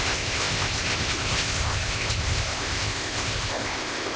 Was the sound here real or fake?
fake